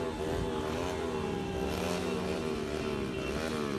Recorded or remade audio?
recorded